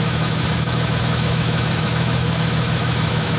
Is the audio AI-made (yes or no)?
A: yes